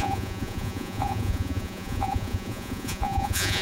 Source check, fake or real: fake